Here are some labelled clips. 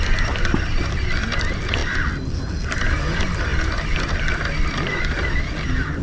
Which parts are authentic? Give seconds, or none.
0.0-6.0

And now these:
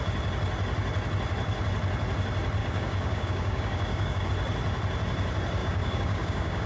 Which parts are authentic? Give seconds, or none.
0.0-2.6; 4.3-5.6

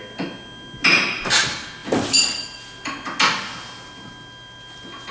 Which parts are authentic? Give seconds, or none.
0.0-5.1

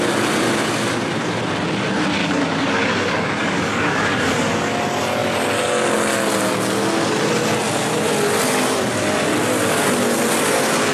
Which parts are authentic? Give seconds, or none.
0.0-2.2; 4.8-10.9

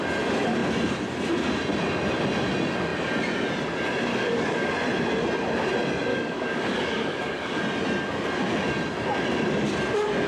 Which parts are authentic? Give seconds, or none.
0.0-4.1; 4.7-6.1; 7.6-10.3